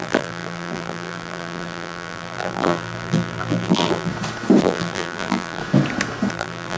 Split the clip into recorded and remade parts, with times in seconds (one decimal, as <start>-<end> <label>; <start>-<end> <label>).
0.0-4.1 remade; 4.1-4.6 recorded; 4.6-5.6 remade; 5.6-6.3 recorded; 6.3-6.8 remade